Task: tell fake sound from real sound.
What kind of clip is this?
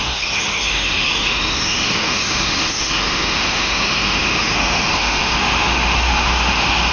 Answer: fake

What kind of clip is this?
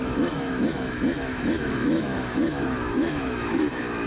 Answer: fake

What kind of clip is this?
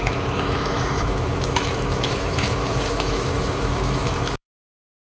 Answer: fake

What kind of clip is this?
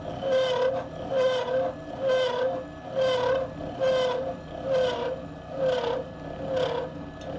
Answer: real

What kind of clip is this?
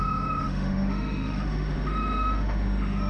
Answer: fake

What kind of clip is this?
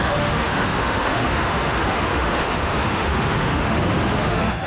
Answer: fake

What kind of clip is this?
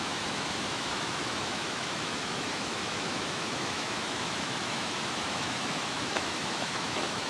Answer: fake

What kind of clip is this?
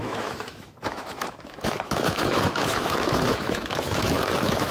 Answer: fake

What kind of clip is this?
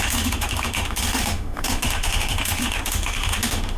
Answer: fake